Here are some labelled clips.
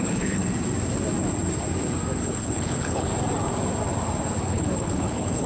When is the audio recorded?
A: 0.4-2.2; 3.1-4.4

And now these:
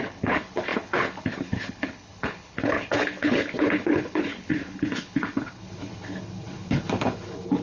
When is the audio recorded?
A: none

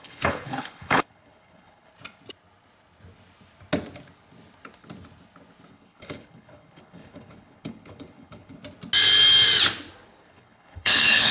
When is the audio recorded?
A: 1.9-5.7; 8.6-10.2

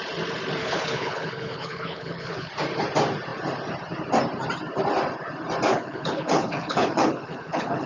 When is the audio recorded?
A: 0.0-0.6; 2.5-5.7

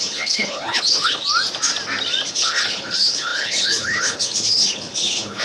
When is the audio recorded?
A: 1.2-2.3

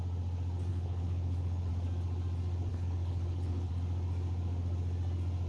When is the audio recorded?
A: 0.0-0.7; 1.7-2.7; 3.7-5.5

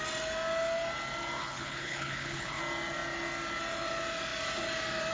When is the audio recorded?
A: 0.0-1.4; 2.6-5.1